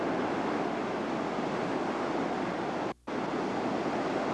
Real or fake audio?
real